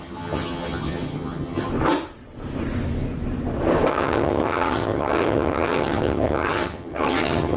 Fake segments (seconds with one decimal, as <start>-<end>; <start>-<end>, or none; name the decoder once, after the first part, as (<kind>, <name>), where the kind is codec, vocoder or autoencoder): 0.0-1.7 (vocoder, HiFi-GAN); 3.9-7.6